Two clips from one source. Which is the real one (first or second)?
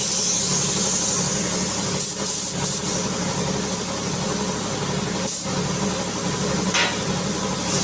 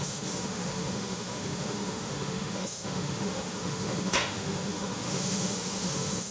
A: first